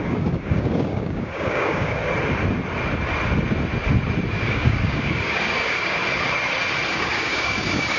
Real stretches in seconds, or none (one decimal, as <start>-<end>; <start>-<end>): 2.0-4.3; 6.0-6.9